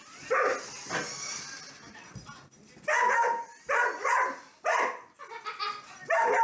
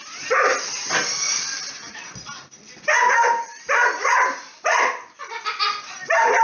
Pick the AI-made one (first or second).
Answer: second